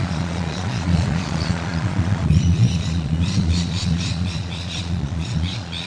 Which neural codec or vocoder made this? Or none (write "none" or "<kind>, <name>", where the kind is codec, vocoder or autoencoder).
vocoder, Vocos